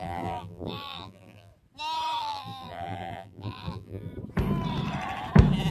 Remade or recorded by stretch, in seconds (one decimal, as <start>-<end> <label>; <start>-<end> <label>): 0.0-1.5 remade; 1.5-2.2 recorded; 2.2-4.1 remade; 4.1-5.7 recorded